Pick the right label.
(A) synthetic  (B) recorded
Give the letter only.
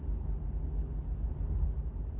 B